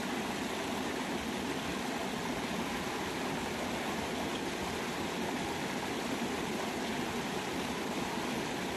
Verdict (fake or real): real